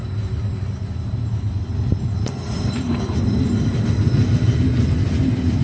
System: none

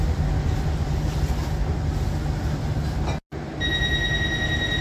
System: none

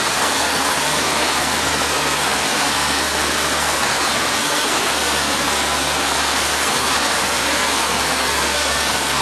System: codec, SNAC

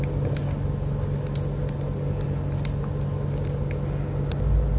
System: none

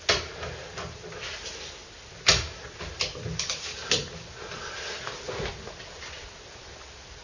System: none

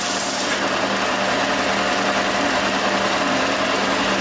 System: none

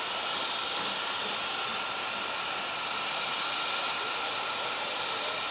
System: none